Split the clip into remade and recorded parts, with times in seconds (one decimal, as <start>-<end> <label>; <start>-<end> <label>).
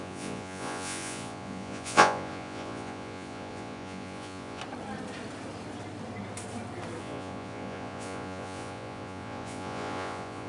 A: 0.0-4.6 remade; 4.6-7.0 recorded; 7.0-10.5 remade